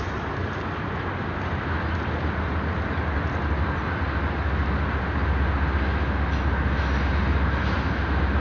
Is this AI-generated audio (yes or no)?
no